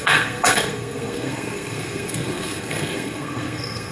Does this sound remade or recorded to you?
remade